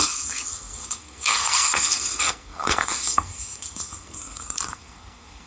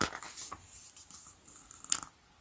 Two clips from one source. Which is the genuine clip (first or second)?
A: second